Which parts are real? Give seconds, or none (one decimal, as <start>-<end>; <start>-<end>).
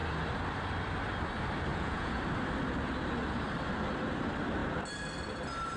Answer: 0.0-1.7; 2.2-5.8